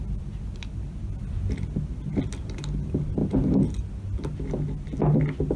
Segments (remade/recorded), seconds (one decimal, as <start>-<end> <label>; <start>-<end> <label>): 0.0-5.6 recorded